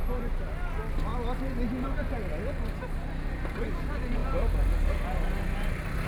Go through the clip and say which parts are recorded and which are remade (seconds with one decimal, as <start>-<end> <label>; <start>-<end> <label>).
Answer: 0.0-6.1 recorded